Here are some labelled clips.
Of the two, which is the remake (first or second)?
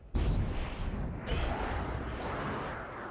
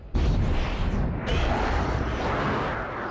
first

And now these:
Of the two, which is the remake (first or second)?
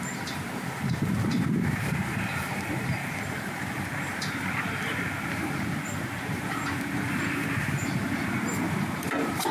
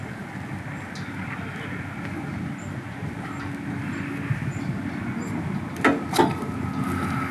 first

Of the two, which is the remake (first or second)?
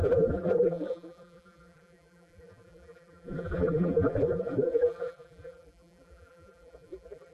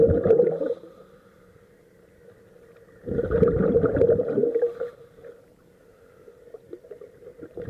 first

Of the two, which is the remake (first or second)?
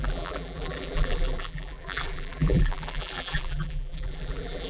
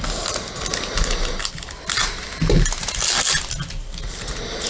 first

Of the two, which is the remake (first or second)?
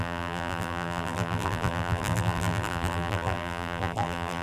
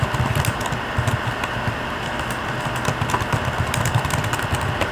first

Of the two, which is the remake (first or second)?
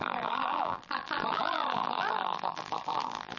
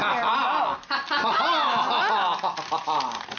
first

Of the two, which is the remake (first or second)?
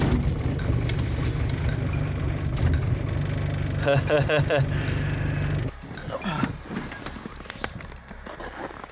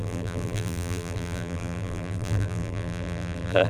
second